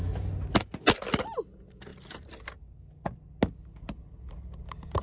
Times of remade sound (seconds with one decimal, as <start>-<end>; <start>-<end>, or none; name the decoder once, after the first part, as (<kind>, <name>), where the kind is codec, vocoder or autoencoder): none